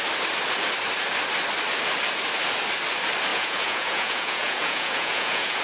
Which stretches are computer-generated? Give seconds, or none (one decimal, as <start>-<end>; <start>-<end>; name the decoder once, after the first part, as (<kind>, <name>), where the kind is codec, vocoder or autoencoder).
3.3-5.6 (vocoder, Vocos)